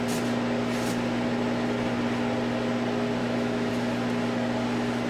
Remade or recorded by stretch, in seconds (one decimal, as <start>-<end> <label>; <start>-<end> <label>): 0.0-3.2 recorded; 3.2-3.7 remade; 3.7-5.1 recorded